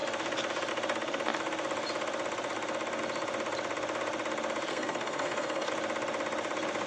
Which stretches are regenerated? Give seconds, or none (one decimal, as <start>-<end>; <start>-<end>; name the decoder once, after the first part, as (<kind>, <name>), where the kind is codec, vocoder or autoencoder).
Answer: 4.7-5.7 (codec, SNAC)